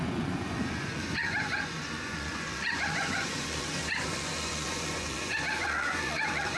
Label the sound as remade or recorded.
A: remade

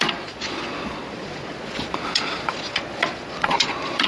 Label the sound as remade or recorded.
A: remade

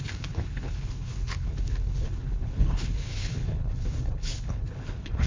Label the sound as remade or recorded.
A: remade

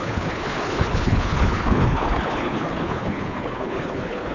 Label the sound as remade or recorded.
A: remade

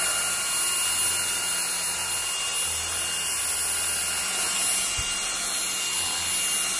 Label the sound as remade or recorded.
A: recorded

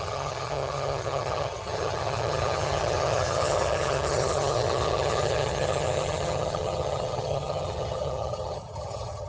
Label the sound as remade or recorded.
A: remade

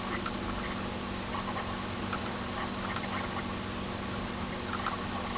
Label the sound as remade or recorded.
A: recorded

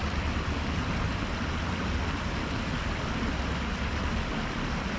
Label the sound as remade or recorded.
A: recorded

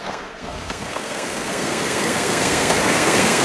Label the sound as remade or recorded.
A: remade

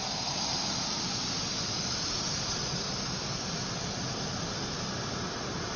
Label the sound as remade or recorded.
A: recorded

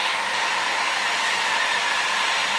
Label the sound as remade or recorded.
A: recorded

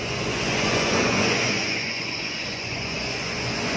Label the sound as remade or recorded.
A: remade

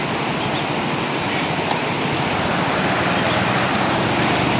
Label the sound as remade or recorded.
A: recorded